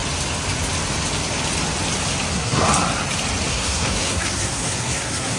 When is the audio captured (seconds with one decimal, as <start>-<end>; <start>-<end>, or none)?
0.0-2.3; 2.7-3.5